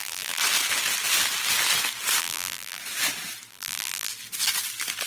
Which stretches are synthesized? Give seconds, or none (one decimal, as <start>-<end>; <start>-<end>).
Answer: 0.0-0.4; 2.2-2.8; 3.5-4.1